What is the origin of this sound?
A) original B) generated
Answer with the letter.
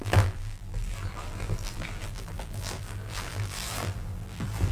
B